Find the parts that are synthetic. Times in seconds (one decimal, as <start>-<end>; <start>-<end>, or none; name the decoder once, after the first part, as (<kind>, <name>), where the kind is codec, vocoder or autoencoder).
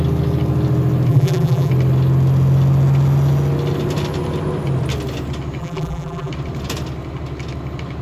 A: 1.1-1.7 (vocoder, BigVGAN v2); 5.6-6.3